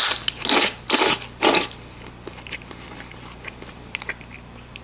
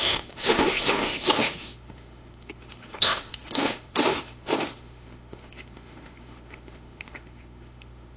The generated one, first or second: second